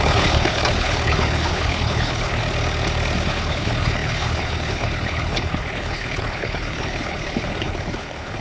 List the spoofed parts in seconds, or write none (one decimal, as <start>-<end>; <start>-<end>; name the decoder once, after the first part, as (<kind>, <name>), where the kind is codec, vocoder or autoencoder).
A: 0.0-2.4 (codec, HILCodec); 3.3-8.4